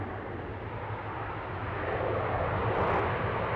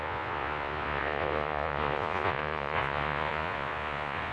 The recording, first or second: first